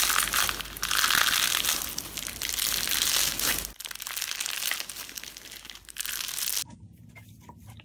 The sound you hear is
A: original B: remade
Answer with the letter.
A